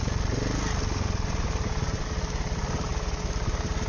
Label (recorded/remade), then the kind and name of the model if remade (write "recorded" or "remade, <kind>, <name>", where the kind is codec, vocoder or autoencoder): recorded